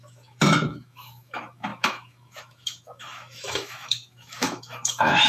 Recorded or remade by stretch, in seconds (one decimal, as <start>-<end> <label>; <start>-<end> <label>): 0.0-5.3 remade